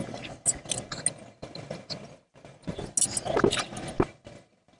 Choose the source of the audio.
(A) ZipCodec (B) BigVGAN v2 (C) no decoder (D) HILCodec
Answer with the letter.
C